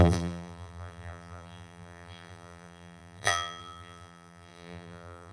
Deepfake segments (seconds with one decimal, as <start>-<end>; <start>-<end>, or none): 0.0-5.3